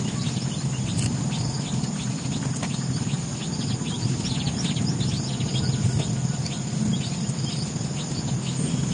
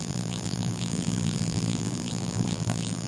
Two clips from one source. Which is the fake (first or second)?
second